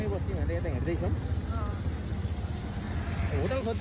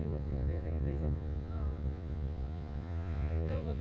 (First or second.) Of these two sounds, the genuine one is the first